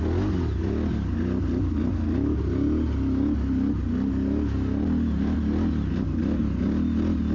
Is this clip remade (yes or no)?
no